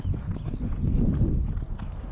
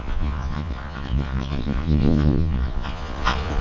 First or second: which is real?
first